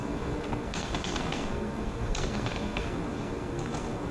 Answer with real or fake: fake